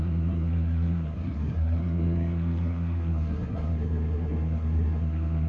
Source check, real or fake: fake